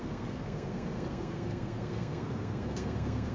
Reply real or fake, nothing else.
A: fake